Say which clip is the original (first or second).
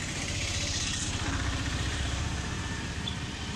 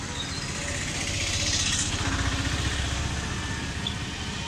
second